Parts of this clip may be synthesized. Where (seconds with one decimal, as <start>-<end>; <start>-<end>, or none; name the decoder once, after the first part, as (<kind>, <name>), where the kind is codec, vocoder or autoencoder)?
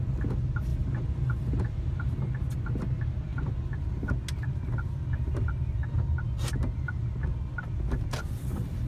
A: 0.7-2.4 (vocoder, BigVGAN v2)